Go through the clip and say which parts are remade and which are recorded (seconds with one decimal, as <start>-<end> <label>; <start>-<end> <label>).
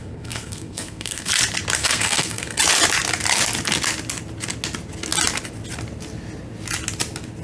0.0-1.3 remade; 1.3-1.8 recorded; 1.8-2.6 remade; 2.6-7.4 recorded